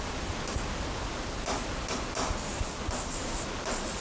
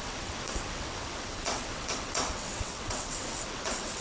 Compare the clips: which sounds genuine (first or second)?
first